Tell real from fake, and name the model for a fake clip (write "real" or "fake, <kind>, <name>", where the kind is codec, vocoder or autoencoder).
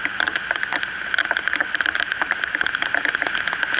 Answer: real